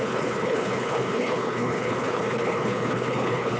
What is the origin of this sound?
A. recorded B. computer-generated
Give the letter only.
B